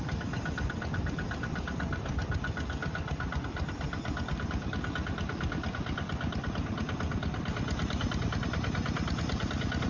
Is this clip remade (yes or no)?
no